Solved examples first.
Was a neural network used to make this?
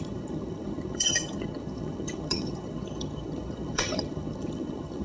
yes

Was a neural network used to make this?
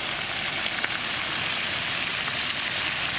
no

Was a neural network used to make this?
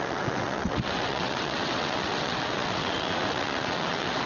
yes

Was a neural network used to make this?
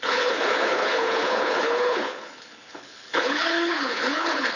yes